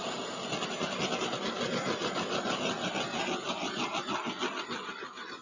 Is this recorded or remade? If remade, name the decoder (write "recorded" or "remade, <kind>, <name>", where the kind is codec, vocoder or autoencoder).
recorded